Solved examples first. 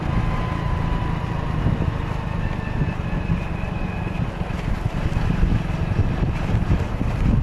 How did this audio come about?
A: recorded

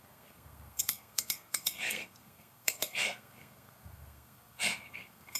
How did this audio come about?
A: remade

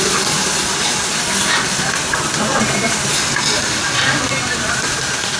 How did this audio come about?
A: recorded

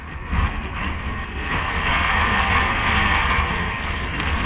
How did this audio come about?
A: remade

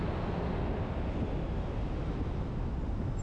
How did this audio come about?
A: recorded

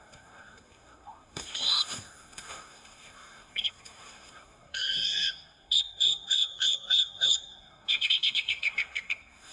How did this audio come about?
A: remade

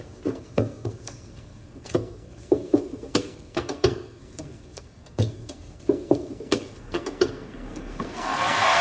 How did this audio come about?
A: remade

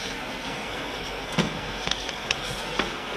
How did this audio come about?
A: remade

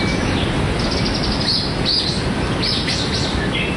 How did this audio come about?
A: recorded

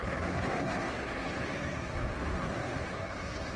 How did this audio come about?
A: remade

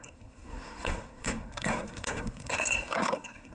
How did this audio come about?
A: remade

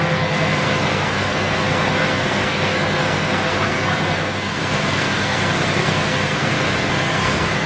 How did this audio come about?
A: remade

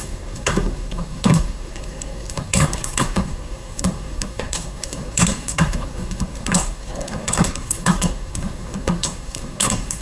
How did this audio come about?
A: remade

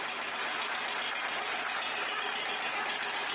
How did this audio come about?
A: recorded